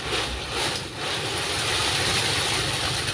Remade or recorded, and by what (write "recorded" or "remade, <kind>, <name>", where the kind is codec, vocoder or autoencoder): recorded